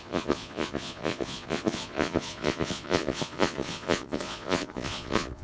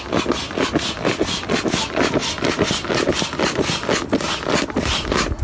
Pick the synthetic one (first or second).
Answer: first